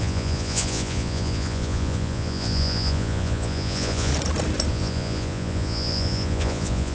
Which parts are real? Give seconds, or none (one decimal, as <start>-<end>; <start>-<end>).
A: 4.1-4.7